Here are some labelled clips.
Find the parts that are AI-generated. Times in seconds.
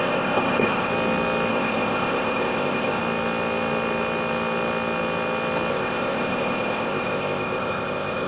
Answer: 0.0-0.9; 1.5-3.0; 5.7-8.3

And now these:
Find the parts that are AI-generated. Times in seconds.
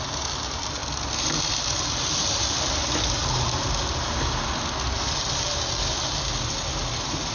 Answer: none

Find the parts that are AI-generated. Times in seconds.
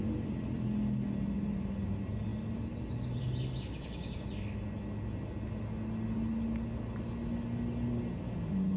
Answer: none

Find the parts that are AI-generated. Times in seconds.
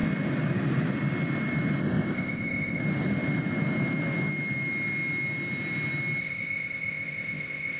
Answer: 1.8-2.8; 6.2-7.8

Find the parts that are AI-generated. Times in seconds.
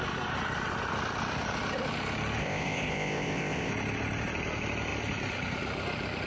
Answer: 2.4-3.7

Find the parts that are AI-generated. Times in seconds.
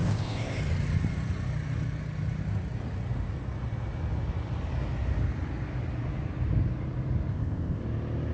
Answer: 0.0-0.6; 7.3-7.8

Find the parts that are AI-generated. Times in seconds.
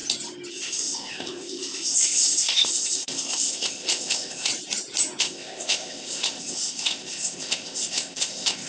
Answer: 0.5-4.5; 5.2-8.7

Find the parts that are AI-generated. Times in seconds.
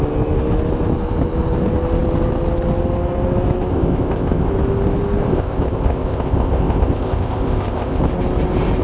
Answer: 3.7-4.5; 5.3-8.0